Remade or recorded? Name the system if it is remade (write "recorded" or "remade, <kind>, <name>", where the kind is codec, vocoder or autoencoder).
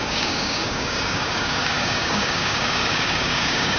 remade, codec, DAC